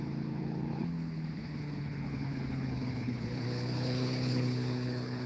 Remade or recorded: remade